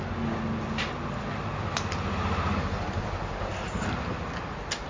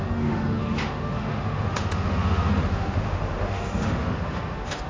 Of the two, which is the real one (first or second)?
first